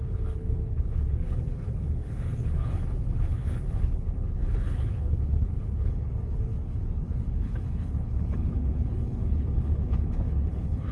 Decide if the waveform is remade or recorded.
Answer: remade